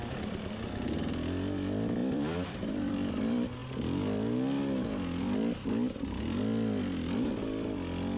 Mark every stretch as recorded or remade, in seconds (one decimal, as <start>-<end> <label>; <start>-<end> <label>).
0.0-2.0 recorded; 2.0-3.1 remade; 3.1-8.2 recorded